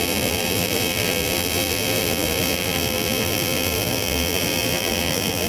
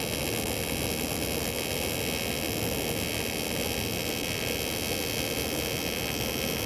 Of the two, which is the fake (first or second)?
first